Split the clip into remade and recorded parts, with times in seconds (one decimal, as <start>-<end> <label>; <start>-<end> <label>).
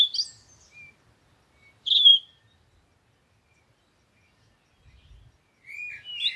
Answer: 0.0-6.4 recorded